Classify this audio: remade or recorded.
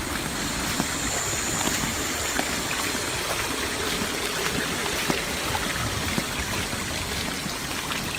recorded